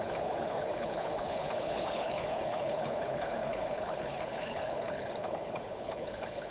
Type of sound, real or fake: fake